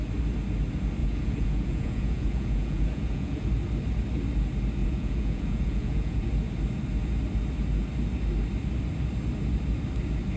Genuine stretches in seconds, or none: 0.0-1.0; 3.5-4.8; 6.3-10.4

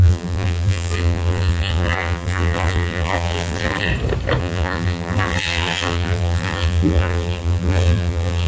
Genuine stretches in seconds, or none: 3.9-4.4

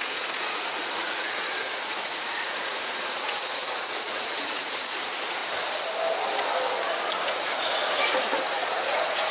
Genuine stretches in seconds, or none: 5.4-7.2

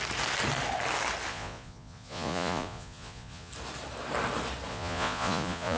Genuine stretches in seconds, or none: 0.0-1.3; 3.5-4.7

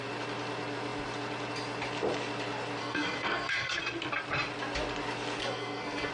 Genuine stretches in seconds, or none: 0.0-2.8; 3.8-5.4